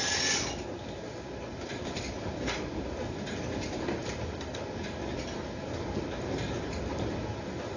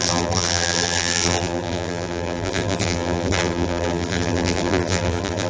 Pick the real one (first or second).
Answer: first